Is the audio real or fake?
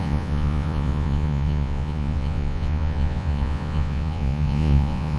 fake